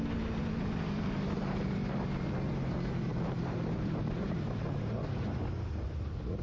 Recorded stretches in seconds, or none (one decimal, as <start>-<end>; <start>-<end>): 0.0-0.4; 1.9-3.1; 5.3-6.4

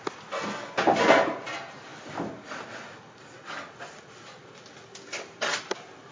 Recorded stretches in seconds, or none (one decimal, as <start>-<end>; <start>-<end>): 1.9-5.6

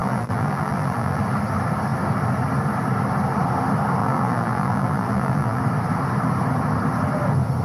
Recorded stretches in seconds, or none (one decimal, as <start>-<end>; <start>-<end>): 1.2-4.0; 5.6-7.6